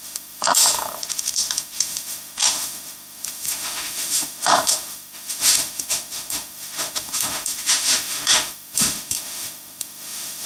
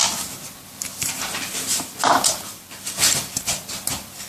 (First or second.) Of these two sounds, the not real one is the first